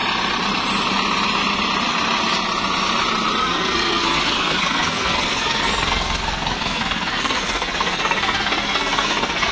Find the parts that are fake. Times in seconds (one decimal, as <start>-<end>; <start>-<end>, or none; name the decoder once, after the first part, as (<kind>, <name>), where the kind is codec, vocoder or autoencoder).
3.4-9.5 (codec, SNAC)